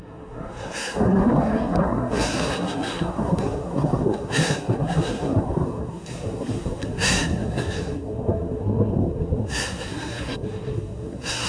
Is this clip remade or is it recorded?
remade